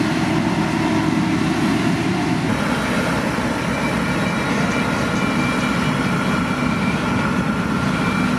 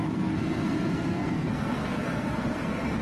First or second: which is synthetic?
second